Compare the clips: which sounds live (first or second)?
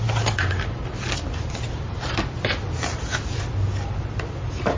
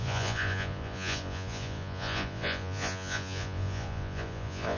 first